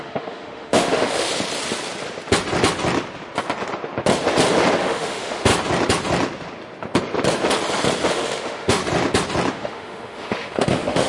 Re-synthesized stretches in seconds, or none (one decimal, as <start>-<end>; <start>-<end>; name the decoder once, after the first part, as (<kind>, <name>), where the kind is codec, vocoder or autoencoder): 0.0-1.3 (autoencoder, DAC-VAE); 4.8-5.5; 8.1-8.8; 9.5-11.1